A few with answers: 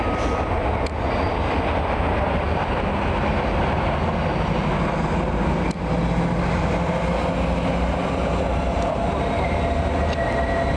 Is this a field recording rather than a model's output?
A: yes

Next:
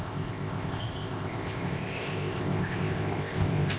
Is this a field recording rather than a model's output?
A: no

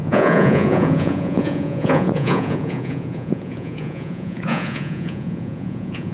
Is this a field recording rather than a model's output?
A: no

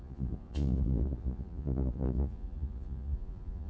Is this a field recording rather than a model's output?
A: no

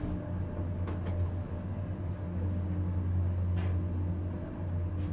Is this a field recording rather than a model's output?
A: yes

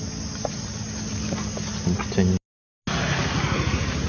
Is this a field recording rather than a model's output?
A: yes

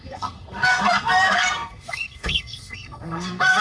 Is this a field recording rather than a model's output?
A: no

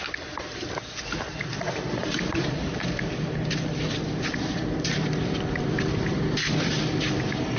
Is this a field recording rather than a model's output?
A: no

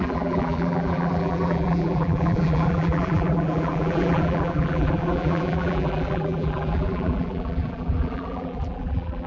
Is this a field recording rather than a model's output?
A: no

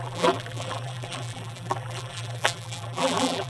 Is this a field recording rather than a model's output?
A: no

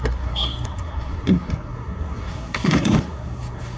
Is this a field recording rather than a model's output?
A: no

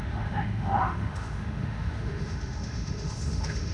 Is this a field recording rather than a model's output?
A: no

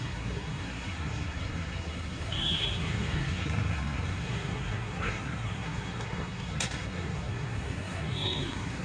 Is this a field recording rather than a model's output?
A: no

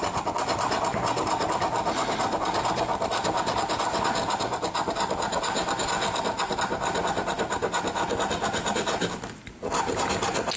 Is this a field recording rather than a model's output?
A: yes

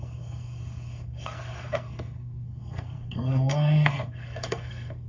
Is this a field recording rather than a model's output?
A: no